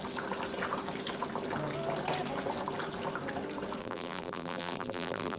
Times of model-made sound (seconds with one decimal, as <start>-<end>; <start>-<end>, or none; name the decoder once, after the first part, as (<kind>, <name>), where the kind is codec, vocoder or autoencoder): 3.8-5.4 (vocoder, BigVGAN v2)